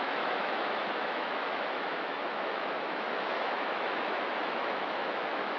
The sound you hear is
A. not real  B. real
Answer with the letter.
A